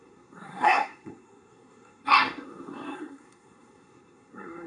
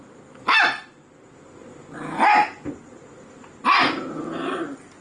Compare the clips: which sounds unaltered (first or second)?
second